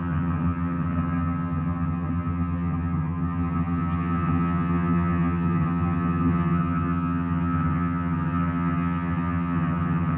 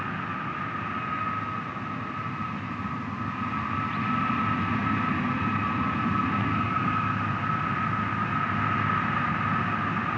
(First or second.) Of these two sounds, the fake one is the first